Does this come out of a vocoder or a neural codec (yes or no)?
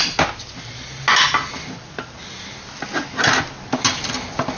no